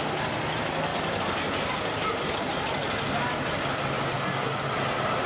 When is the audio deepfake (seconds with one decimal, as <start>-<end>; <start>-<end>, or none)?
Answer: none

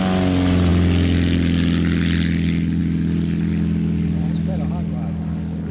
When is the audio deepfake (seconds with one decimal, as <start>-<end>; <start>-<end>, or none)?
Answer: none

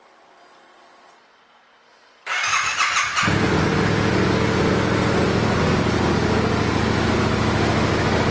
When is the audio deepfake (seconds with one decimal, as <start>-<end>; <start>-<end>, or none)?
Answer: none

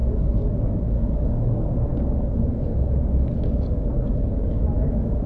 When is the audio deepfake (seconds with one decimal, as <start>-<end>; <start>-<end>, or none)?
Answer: 0.0-5.3

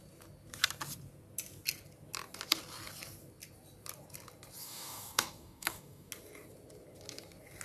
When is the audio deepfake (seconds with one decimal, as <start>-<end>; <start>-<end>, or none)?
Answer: 4.6-6.1

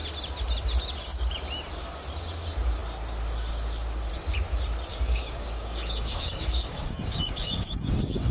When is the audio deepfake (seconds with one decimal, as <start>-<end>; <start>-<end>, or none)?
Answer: 4.9-8.3

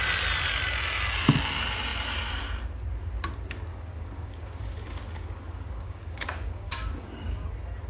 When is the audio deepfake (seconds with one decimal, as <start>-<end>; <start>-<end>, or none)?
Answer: 3.7-7.5

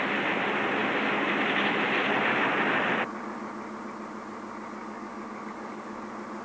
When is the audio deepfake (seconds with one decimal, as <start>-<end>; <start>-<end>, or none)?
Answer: 4.8-6.0